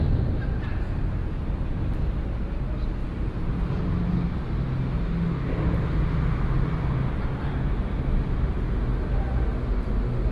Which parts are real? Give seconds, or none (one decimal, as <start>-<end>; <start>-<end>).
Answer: 0.0-10.3